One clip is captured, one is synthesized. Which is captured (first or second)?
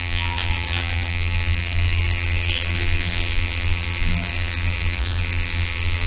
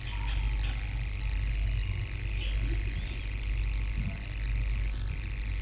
second